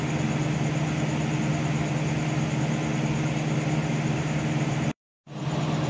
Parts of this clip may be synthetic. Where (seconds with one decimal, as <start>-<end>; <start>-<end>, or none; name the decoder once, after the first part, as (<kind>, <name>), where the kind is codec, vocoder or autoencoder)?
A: 3.8-5.3 (vocoder, BigVGAN v2)